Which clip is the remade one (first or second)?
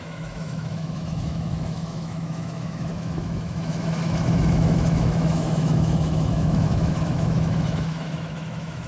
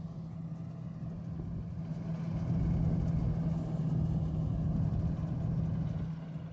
first